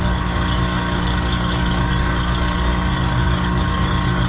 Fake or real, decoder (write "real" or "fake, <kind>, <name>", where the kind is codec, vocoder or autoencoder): fake, codec, DAC